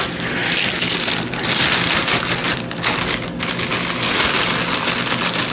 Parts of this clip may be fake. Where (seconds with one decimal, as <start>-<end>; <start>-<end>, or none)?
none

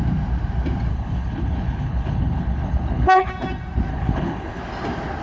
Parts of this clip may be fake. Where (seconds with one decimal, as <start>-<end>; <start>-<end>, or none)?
0.9-3.3; 3.9-4.6

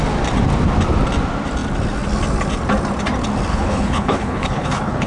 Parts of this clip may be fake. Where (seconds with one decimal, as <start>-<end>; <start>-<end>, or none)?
3.5-5.1